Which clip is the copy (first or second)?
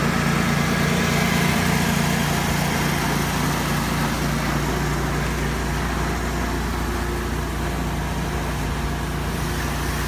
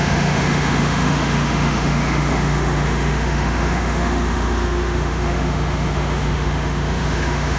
second